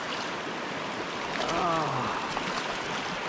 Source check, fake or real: real